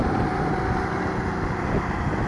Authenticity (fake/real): real